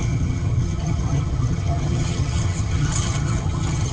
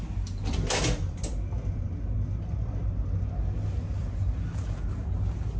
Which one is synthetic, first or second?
first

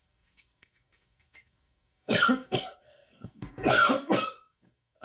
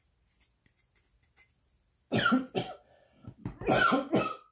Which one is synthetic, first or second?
first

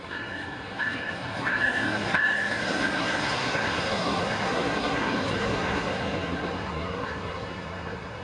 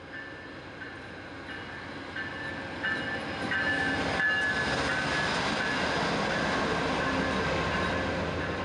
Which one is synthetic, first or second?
first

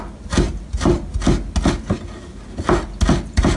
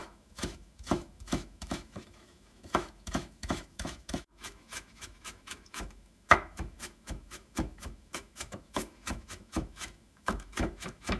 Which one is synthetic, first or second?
second